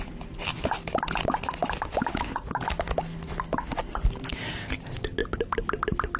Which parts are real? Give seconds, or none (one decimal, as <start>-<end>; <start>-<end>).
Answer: 0.0-6.2